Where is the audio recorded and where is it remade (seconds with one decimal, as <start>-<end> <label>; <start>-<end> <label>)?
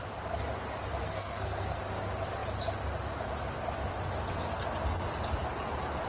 0.0-1.0 recorded; 1.0-1.8 remade; 1.8-6.1 recorded